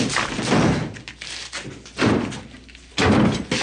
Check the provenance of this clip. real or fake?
real